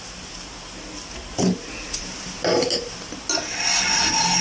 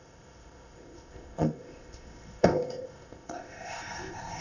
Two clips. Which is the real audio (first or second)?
first